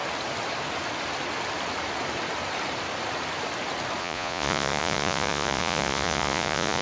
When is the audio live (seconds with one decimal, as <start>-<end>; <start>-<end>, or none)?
0.0-4.0